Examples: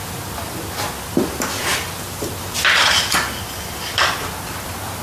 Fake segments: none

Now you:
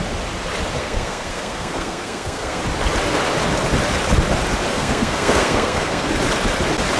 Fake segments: 0.8-2.6 (codec, SNAC); 4.7-6.1

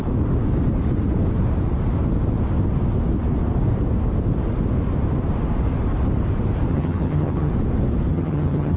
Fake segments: 6.7-7.5 (vocoder, HiFi-GAN); 8.1-8.8

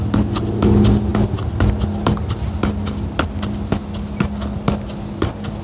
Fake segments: none

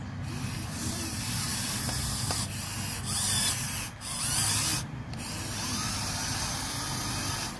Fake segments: none